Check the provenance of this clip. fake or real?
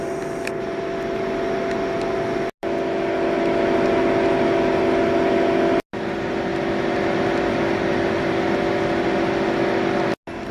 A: real